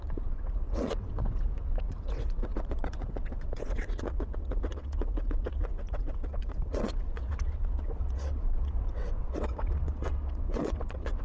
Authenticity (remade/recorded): remade